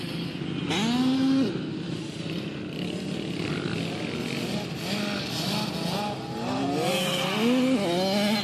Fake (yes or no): no